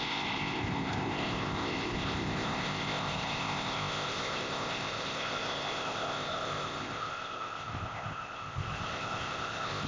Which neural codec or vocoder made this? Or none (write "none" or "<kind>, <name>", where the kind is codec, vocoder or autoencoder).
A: codec, ZipCodec